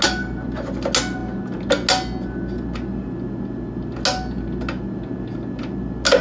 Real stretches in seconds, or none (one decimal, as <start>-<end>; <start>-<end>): 0.0-6.2